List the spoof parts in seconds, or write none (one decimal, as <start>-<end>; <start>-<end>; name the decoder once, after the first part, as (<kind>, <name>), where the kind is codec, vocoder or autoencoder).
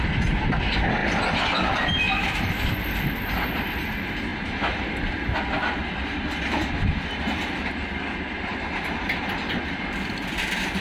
1.0-1.8 (vocoder, BigVGAN v2); 4.3-7.6; 8.5-10.8